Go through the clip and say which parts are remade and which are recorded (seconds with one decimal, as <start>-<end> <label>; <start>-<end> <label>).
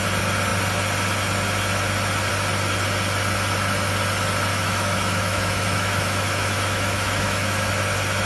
0.0-4.5 recorded; 4.5-7.7 remade; 7.7-8.3 recorded